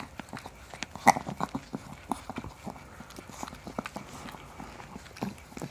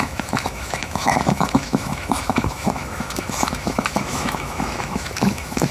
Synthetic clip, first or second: second